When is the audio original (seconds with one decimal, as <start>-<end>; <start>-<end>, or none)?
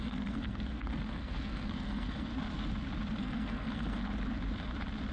2.3-3.2; 4.0-5.1